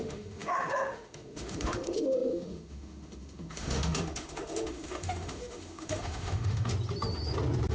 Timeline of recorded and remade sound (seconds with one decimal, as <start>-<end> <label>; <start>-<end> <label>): 0.0-6.7 remade; 6.7-7.7 recorded